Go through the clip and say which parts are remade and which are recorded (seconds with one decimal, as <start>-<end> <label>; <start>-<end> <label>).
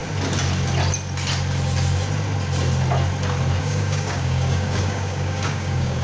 0.0-3.6 recorded; 3.6-6.0 remade